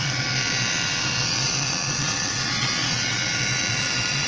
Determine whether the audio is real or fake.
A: fake